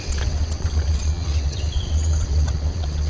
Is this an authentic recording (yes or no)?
no